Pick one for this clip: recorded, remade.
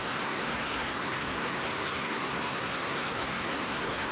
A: remade